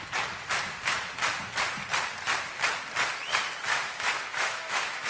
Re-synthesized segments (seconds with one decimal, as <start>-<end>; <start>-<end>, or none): 3.7-5.1